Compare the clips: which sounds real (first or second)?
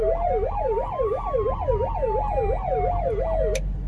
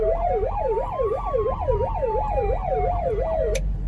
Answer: first